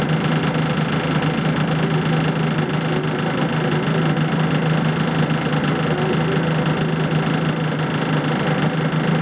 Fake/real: real